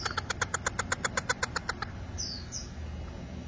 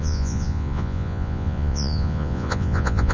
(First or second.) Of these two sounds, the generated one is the second